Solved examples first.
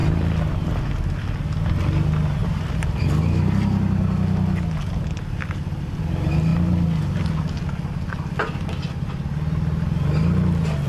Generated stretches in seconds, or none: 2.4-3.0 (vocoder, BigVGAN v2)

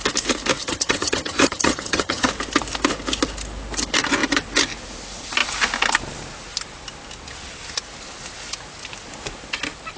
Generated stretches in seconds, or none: 0.6-2.3 (vocoder, HiFi-GAN)